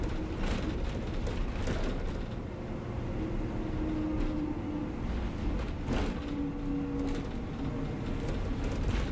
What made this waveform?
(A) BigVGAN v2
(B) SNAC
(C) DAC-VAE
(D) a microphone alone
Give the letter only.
D